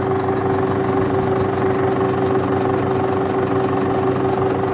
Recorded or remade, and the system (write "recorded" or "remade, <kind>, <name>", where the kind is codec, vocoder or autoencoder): recorded